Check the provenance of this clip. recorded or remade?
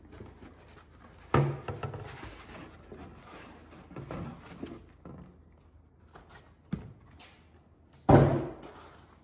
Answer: recorded